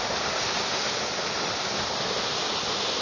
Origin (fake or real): real